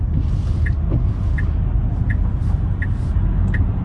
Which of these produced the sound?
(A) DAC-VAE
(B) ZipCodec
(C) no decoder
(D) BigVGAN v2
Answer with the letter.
C